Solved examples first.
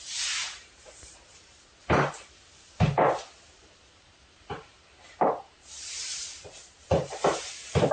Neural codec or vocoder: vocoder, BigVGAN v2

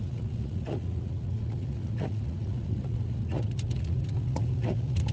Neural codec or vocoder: vocoder, Vocos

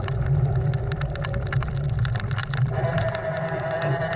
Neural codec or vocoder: vocoder, BigVGAN v2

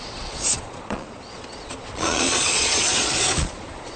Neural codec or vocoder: vocoder, Vocos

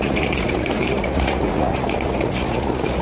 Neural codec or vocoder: vocoder, Vocos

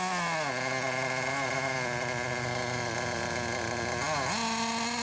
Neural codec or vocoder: none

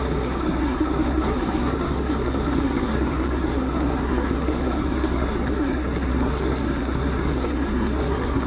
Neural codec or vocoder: codec, SNAC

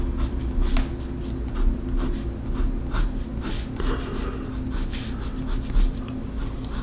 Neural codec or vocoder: none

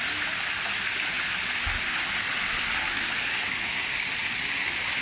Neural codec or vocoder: none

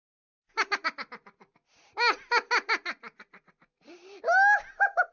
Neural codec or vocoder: none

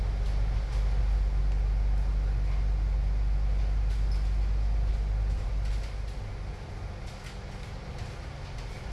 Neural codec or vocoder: none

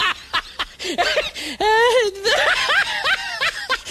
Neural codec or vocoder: none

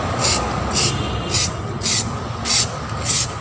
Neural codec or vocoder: none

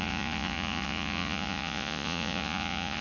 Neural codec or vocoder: vocoder, Vocos